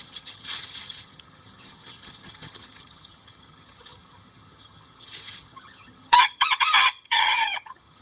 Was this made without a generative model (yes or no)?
no